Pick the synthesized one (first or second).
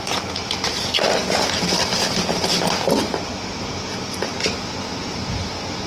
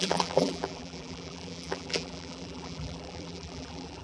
second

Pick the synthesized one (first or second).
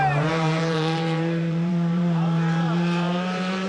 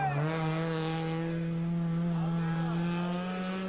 first